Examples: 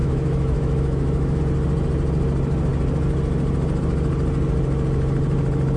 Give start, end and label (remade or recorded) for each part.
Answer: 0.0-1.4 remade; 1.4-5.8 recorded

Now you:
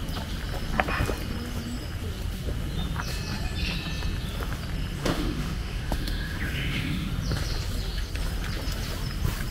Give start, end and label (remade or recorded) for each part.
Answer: 0.0-5.0 recorded; 5.0-7.1 remade; 7.1-9.5 recorded

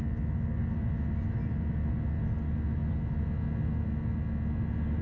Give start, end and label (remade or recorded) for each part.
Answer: 0.0-5.0 recorded

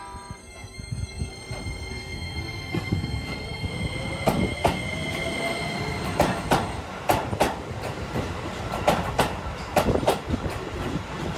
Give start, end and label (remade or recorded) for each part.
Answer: 0.0-0.4 recorded; 0.4-1.3 remade; 1.3-1.9 recorded; 1.9-3.7 remade; 3.7-11.4 recorded

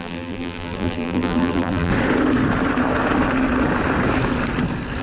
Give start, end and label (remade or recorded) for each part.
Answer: 0.0-1.9 remade; 1.9-5.0 recorded

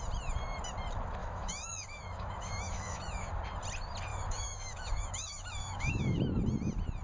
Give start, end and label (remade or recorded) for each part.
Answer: 0.0-1.2 recorded; 1.2-3.3 remade; 3.3-4.1 recorded; 4.1-6.2 remade; 6.2-7.0 recorded